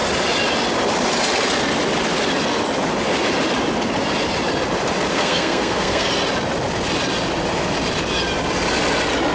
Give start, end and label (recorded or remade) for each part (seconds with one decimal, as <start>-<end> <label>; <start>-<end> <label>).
0.0-5.1 recorded; 5.1-6.1 remade; 6.1-9.3 recorded